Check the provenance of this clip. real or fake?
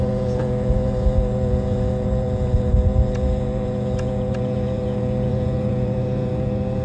fake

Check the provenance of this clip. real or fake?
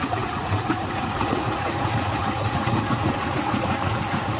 fake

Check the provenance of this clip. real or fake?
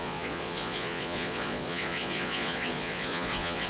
fake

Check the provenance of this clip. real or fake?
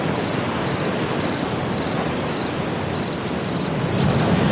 real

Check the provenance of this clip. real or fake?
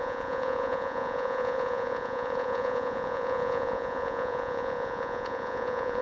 fake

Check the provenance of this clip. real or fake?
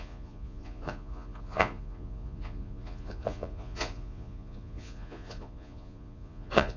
fake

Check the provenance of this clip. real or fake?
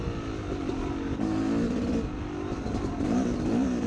real